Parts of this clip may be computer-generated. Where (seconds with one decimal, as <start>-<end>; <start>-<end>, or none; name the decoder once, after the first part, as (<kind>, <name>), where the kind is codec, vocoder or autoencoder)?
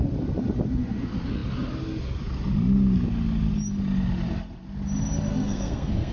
5.3-6.1 (codec, SNAC)